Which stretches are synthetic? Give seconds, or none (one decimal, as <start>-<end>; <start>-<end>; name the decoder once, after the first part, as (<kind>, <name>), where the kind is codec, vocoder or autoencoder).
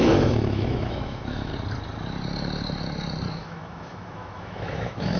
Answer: 0.0-1.5 (autoencoder, DAC-VAE); 3.3-5.2